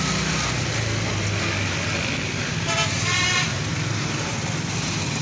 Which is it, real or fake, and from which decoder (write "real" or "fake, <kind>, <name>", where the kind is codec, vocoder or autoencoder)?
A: real